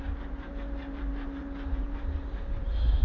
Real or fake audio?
fake